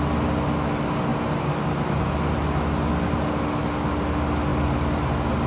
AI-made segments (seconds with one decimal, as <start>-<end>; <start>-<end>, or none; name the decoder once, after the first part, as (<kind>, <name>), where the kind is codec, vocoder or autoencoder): 1.1-3.3 (vocoder, BigVGAN v2); 4.5-5.0